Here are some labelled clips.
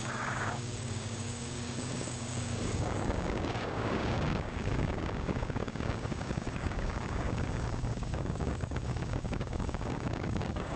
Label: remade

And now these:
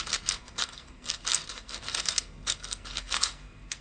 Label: remade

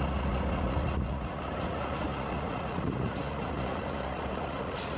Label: remade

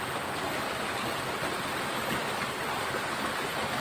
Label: recorded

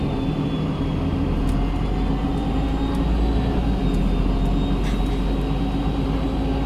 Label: recorded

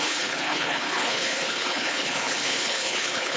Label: remade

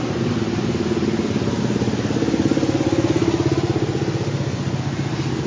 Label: recorded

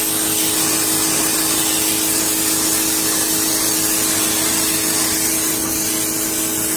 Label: recorded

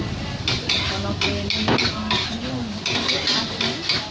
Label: recorded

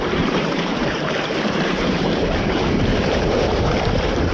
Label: remade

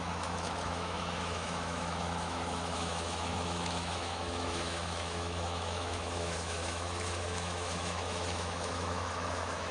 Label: remade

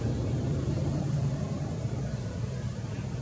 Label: remade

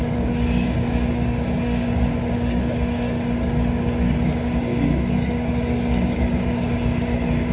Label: remade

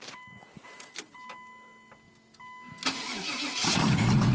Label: recorded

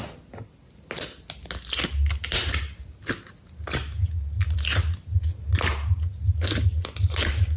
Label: recorded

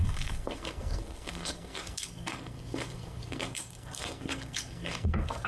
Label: remade